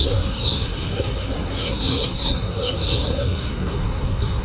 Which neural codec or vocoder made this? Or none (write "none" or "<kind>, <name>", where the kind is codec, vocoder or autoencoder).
codec, SNAC